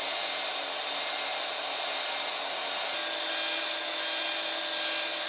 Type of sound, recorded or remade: recorded